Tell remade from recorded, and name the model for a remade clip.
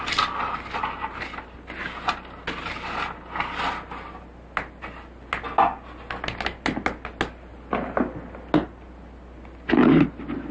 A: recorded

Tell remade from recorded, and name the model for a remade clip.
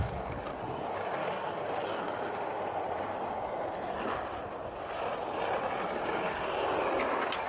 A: recorded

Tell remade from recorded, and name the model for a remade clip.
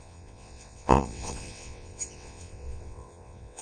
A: remade, vocoder, WaveNeXt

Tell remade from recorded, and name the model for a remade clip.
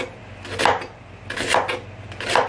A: recorded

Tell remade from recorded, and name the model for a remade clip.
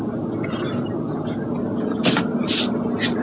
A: recorded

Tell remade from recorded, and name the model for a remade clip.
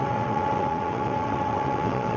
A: remade, vocoder, WaveNeXt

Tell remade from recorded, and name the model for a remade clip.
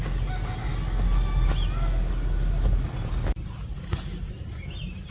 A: recorded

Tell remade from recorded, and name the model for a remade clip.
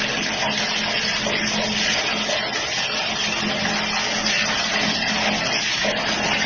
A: recorded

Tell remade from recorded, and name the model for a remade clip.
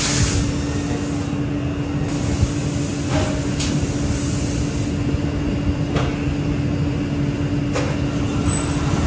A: recorded